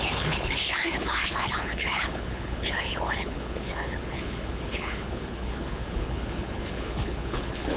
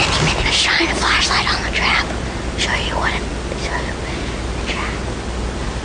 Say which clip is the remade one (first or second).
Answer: first